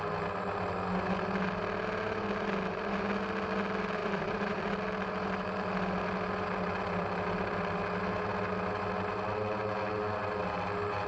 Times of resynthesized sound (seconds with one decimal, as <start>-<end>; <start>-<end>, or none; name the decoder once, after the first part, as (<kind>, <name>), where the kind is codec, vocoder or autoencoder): 4.0-4.6 (vocoder, BigVGAN v2)